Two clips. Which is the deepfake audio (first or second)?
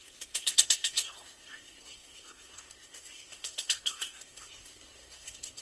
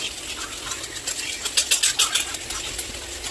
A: first